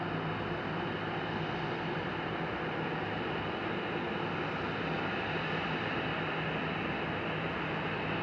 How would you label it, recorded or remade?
recorded